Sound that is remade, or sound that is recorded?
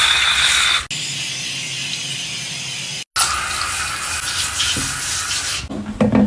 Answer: recorded